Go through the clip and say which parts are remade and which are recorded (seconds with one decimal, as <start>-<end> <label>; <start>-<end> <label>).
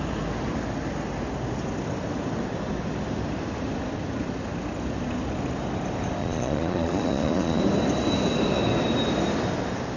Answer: 0.0-6.2 recorded; 6.2-7.6 remade; 7.6-10.0 recorded